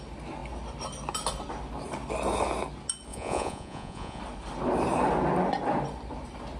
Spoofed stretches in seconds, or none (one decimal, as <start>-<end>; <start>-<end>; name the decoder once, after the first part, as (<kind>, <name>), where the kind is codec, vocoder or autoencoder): 3.1-4.2 (vocoder, Vocos)